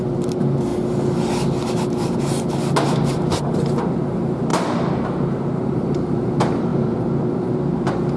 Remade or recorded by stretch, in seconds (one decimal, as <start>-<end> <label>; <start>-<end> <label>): 0.0-0.7 remade; 0.7-3.1 recorded; 3.1-8.2 remade